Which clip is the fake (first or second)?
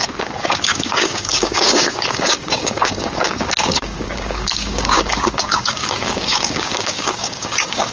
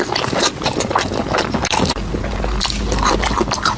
first